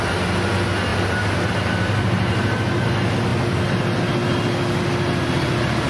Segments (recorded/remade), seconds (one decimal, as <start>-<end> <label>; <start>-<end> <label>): 0.0-0.9 recorded; 0.9-2.9 remade; 2.9-5.9 recorded